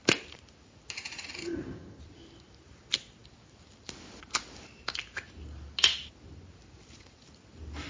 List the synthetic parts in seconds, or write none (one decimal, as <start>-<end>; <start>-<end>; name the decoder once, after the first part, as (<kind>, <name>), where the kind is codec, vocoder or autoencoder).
1.4-2.0 (vocoder, HiFi-GAN)